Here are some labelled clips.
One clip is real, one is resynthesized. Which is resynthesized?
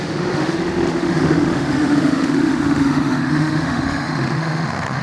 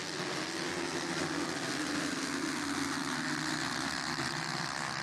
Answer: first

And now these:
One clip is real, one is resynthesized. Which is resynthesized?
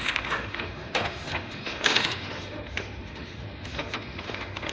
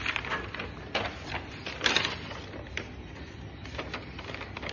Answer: first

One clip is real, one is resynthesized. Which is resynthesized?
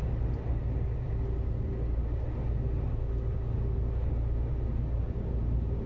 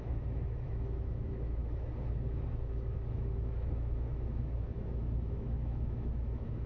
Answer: second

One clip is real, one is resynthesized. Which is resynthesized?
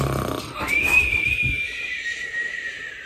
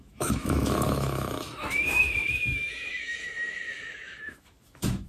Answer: second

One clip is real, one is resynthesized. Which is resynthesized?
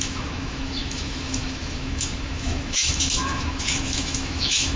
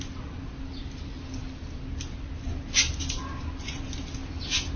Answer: first